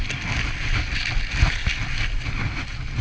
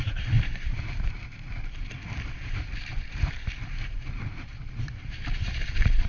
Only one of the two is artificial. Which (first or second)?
second